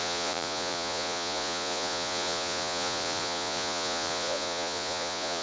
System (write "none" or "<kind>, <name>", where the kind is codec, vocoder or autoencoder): vocoder, Vocos